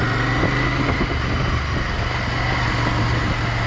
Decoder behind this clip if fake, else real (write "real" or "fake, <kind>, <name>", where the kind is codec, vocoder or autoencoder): real